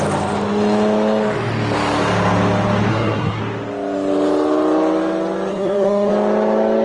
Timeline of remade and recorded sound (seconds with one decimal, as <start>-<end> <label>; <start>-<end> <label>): 0.0-2.9 recorded; 2.9-3.4 remade; 3.4-5.5 recorded; 5.5-6.1 remade; 6.1-6.8 recorded